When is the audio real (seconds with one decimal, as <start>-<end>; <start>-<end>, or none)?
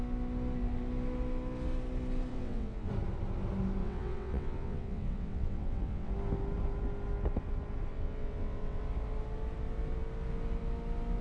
0.0-2.3; 2.9-3.8; 6.1-7.9; 8.8-11.2